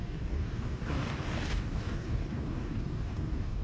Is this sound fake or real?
fake